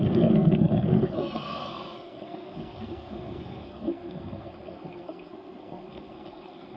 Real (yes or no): no